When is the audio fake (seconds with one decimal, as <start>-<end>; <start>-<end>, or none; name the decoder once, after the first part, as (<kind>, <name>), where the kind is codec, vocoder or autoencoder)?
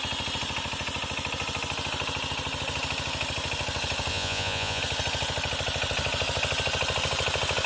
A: 4.1-4.8 (vocoder, Vocos)